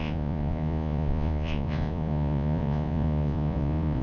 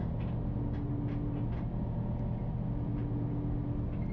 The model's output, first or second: first